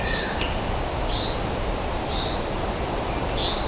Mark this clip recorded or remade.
recorded